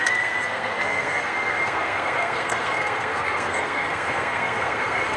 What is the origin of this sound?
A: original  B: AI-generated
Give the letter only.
B